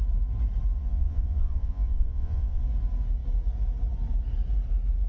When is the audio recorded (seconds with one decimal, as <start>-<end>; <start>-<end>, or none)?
0.0-0.8; 2.6-5.1